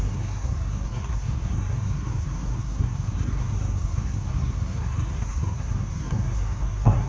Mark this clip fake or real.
fake